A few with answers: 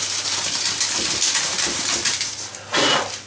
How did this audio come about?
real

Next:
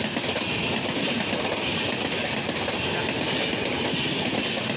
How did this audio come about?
real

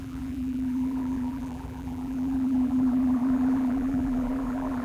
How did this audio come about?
fake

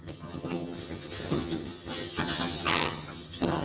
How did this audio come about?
fake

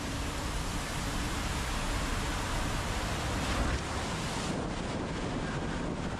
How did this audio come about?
real